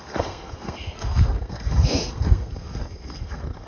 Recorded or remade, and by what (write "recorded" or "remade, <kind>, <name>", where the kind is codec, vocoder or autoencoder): remade, codec, SNAC